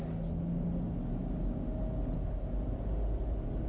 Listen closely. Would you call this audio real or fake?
real